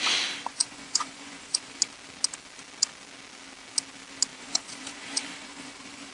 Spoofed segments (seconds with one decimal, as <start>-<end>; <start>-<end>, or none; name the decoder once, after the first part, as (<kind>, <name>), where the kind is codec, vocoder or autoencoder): 0.5-1.7 (vocoder, Vocos); 4.3-6.1